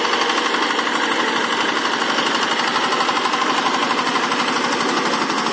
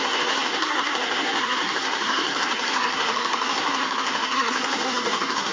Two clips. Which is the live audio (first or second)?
first